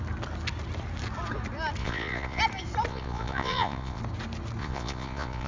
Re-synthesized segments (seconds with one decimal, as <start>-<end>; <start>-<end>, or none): 1.8-2.4; 2.9-4.0; 4.6-5.5

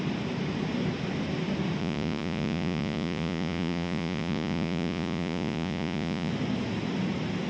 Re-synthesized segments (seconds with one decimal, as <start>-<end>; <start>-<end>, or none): 1.8-6.3

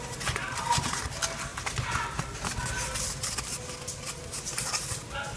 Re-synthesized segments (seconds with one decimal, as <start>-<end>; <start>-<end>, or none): none